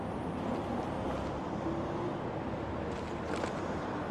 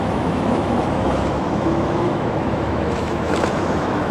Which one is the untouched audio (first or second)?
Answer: first